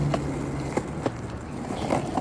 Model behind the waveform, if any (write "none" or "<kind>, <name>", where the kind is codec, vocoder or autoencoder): none